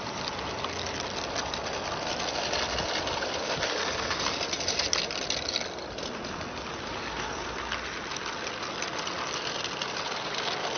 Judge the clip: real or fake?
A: real